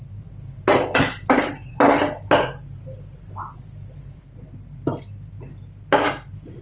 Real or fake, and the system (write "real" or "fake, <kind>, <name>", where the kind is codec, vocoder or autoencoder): real